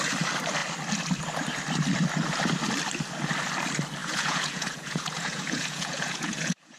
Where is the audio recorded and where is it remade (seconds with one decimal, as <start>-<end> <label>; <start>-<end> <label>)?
0.0-4.0 recorded; 4.0-6.8 remade